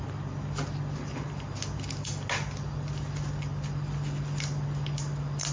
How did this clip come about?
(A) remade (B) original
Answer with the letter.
B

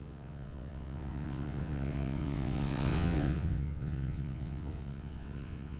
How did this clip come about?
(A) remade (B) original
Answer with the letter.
A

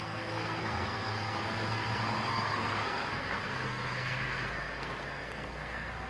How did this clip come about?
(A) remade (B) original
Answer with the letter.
A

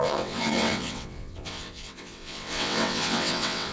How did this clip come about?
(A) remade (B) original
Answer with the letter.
A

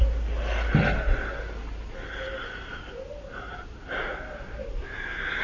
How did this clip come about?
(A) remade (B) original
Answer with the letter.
B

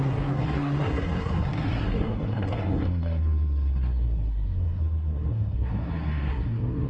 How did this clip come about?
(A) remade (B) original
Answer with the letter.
A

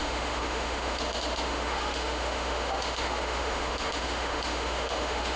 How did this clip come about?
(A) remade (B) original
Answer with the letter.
A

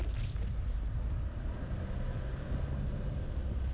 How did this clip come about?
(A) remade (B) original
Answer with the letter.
A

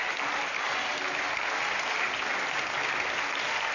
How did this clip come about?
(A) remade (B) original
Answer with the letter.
B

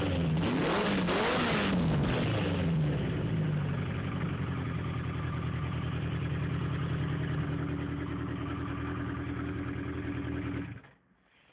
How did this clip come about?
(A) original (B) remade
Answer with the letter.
A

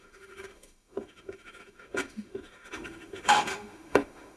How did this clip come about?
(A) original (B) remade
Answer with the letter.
B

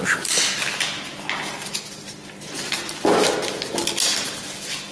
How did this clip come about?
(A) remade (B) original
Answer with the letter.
B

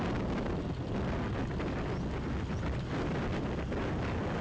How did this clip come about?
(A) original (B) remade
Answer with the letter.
A